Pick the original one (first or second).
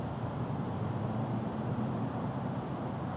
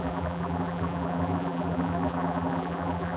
first